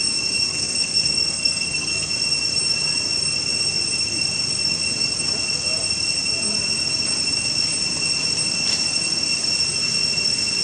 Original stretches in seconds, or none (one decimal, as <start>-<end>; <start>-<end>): 0.0-0.5; 2.1-10.6